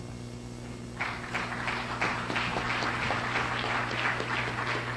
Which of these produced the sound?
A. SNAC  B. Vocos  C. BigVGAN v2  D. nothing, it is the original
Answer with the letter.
D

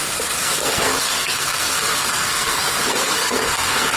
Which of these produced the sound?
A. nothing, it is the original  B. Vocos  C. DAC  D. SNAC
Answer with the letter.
D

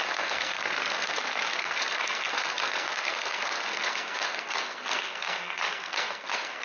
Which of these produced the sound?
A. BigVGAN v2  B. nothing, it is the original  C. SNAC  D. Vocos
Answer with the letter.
C